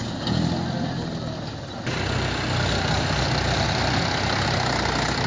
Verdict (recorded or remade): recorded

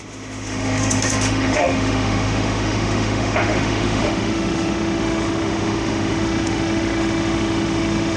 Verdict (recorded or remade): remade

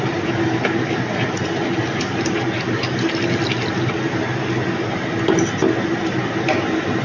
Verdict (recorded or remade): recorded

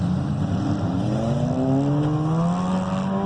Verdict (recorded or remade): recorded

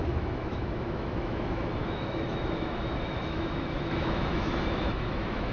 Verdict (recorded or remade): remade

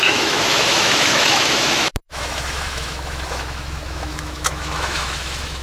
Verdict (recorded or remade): remade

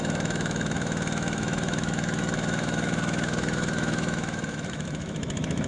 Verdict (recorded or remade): remade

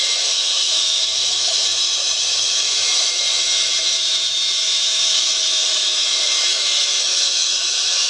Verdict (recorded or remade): remade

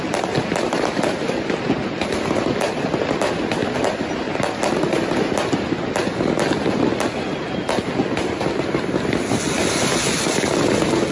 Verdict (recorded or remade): recorded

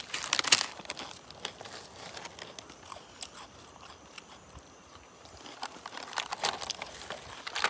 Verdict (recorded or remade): recorded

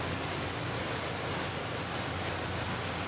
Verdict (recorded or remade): recorded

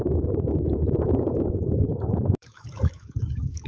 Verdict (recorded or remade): remade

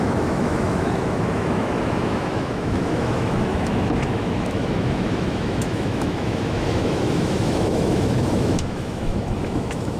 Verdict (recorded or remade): remade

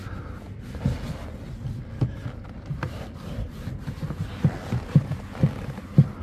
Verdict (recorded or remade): recorded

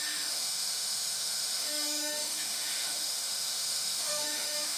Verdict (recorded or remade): remade